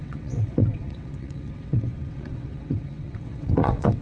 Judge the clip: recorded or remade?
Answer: remade